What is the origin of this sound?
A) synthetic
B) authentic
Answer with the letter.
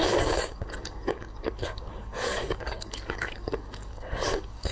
A